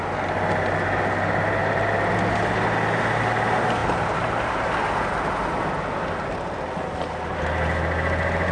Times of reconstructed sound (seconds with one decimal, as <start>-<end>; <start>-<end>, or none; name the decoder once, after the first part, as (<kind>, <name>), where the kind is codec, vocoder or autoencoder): 1.6-2.1 (vocoder, BigVGAN v2); 3.8-4.7